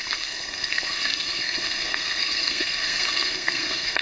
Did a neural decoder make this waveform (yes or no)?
yes